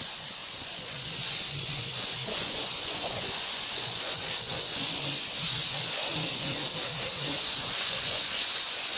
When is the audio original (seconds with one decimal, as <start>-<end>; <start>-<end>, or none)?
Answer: 6.6-7.1